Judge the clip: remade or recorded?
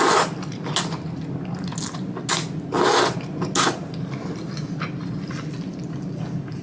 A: recorded